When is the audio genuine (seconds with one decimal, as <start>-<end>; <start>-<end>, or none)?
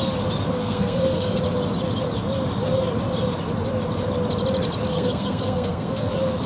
0.0-0.6; 1.4-4.9; 6.1-6.5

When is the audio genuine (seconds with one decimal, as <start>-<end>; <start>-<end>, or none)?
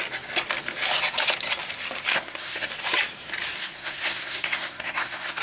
0.0-2.1; 2.7-3.6